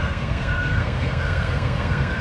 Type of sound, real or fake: fake